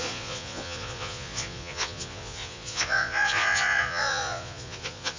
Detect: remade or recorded remade